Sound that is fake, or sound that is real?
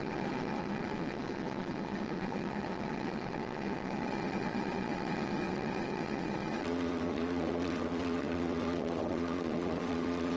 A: fake